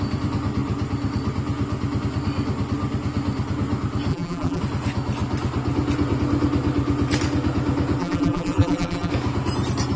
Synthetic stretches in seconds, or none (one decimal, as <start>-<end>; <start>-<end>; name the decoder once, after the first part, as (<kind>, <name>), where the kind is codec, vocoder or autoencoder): 4.1-4.6 (vocoder, BigVGAN v2); 8.0-9.1